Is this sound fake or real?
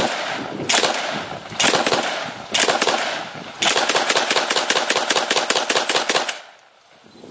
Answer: real